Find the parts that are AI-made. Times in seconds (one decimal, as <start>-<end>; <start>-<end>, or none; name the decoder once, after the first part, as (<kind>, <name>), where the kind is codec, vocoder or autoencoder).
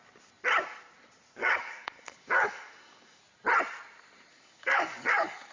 1.4-3.2 (codec, DAC); 4.3-5.5